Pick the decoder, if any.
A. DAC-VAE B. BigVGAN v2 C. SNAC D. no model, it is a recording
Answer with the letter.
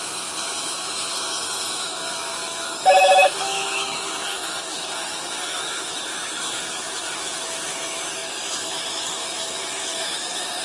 A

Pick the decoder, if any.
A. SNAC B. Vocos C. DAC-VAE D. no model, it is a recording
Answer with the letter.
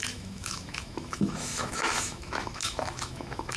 C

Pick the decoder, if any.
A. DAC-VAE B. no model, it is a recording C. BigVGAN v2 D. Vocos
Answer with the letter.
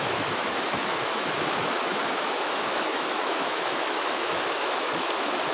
A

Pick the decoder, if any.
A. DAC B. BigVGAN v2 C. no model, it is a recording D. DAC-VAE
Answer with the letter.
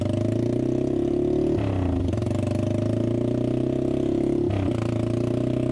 C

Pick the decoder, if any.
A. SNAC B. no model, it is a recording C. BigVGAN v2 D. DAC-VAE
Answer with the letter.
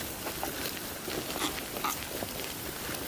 B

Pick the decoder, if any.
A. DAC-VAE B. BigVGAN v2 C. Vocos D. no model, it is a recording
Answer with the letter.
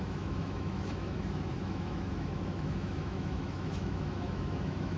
A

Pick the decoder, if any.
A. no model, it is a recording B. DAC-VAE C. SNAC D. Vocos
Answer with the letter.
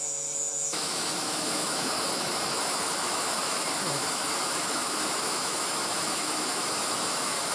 B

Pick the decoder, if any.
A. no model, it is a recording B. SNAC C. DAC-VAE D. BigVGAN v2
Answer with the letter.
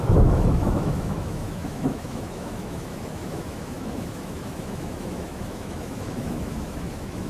C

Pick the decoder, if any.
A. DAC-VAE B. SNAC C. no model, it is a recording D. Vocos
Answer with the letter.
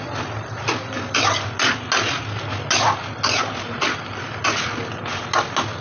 C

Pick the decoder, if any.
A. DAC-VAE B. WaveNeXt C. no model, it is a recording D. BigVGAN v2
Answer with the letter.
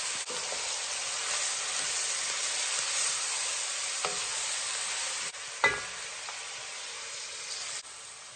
C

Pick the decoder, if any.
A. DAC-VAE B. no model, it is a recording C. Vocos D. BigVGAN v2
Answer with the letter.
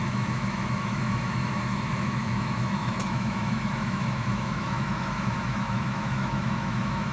A